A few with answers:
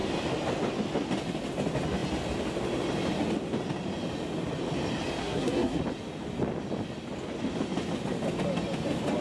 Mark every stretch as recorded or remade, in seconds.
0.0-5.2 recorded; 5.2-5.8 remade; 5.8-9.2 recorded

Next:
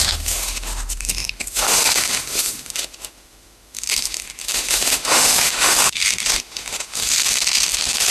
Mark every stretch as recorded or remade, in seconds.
0.0-8.1 remade

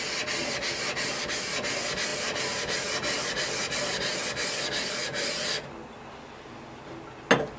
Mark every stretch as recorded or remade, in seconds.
0.0-7.6 recorded

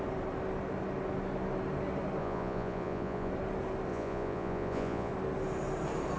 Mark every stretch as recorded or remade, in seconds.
0.0-2.2 recorded; 2.2-3.3 remade; 3.3-3.9 recorded; 3.9-5.1 remade; 5.1-6.2 recorded

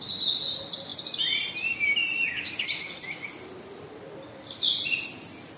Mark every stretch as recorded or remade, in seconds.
0.0-5.6 recorded